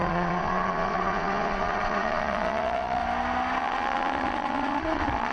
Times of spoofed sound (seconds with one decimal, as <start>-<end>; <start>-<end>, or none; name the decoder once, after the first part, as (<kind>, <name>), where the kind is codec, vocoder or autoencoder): 0.0-3.0 (vocoder, Vocos); 3.6-5.3